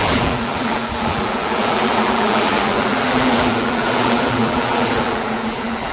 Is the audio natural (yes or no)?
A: no